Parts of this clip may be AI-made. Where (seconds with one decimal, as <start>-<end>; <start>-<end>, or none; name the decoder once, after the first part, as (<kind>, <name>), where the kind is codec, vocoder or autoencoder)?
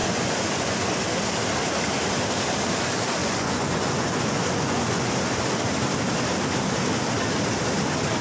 0.0-1.0 (vocoder, Vocos); 3.2-5.1